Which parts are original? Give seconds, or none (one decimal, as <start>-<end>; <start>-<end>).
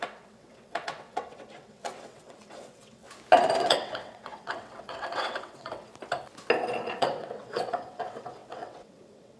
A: 3.0-3.6; 5.9-6.9